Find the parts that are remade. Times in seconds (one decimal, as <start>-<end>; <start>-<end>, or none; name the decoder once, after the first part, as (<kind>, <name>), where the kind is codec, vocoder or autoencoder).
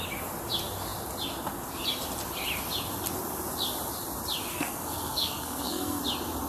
4.5-6.0 (codec, SNAC)